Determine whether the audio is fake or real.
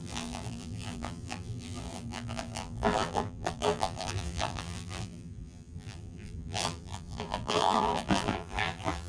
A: fake